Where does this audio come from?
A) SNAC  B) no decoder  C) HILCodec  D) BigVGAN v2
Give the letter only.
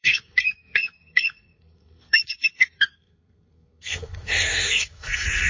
A